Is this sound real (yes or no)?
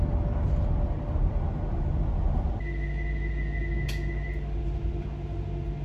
yes